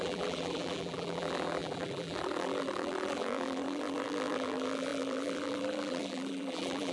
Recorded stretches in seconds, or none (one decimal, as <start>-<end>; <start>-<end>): none

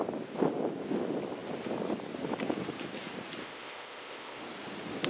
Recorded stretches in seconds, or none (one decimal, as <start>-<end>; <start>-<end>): 0.0-3.4; 4.4-5.1

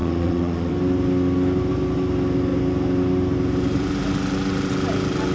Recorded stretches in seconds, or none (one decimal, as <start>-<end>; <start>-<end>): 0.7-5.3

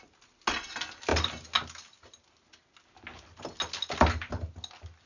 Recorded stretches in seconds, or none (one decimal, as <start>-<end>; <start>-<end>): 0.0-5.1

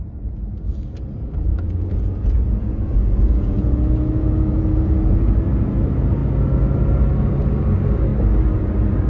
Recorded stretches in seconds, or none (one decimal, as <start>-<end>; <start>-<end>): 0.0-1.5; 5.3-9.1

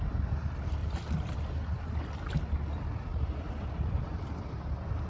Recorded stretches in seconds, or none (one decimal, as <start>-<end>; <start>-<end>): 0.0-0.8; 2.0-3.1

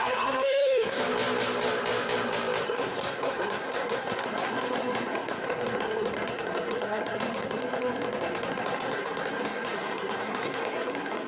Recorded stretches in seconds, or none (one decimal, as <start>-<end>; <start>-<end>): 1.0-2.6

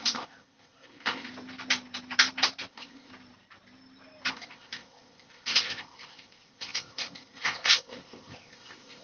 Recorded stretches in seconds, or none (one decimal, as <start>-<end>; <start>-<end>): 1.3-2.7; 3.1-4.3